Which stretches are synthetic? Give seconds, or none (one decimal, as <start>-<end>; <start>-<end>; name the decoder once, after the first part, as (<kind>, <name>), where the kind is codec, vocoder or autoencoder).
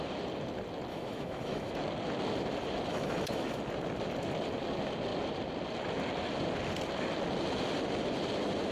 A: 0.9-1.7 (autoencoder, DAC-VAE); 2.9-3.6